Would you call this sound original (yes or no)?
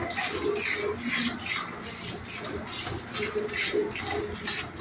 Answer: yes